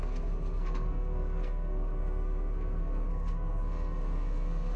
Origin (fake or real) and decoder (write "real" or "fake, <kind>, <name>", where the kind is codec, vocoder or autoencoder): fake, codec, SNAC